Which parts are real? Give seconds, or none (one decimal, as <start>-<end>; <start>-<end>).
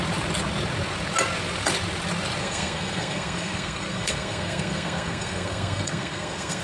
0.0-2.4